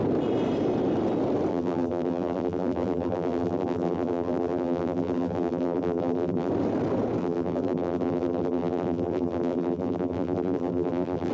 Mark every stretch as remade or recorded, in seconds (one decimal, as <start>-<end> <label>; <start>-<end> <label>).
0.0-1.5 recorded; 1.5-6.5 remade; 6.5-7.2 recorded; 7.2-11.3 remade